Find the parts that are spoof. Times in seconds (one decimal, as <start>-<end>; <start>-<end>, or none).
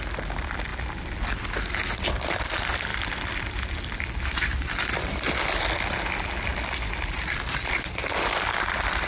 0.0-0.7; 1.2-9.1